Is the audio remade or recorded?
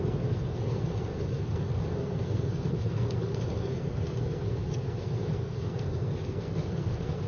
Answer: remade